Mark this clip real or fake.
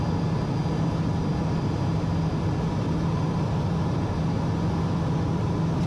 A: real